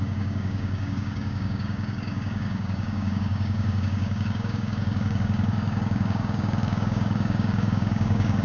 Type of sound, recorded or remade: remade